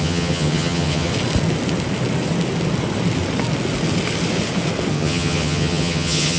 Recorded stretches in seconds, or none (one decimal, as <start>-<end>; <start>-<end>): 1.1-4.9